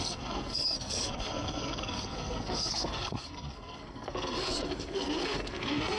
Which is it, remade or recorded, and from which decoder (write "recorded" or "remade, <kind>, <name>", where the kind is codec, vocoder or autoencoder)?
remade, codec, SNAC